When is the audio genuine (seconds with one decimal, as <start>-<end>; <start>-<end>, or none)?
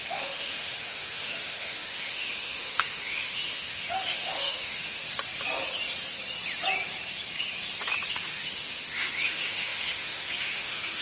5.0-8.1